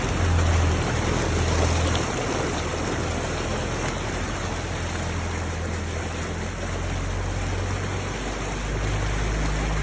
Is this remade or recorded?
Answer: recorded